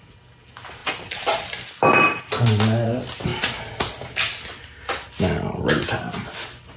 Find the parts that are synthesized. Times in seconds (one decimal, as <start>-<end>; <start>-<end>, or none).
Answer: none